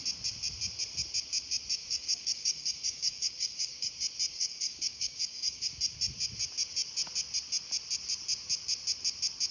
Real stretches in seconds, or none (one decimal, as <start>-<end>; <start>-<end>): 0.0-1.8; 3.9-4.3; 5.7-9.5